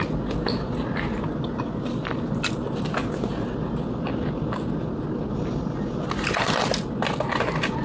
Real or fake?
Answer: real